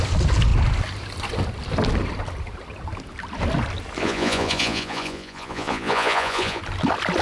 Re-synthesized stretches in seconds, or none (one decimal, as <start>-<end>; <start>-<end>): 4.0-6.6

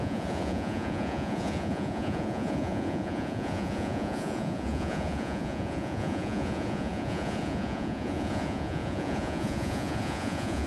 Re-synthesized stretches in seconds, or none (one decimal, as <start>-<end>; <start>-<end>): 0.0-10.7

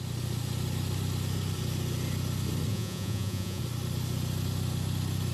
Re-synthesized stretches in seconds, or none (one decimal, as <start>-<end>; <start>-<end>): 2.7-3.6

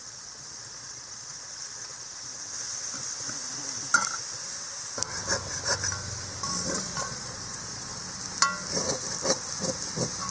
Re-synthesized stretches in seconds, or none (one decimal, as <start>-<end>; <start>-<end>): 0.0-2.3; 6.7-7.9

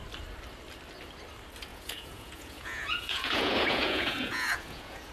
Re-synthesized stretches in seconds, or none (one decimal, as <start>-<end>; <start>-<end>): 1.7-5.1